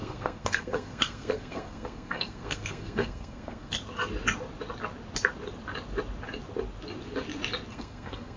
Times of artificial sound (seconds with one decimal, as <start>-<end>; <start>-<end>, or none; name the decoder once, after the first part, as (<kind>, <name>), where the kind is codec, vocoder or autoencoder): 0.0-3.7 (codec, SNAC); 7.7-8.4